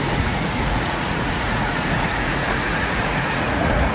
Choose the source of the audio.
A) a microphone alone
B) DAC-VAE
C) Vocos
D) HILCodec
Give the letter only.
C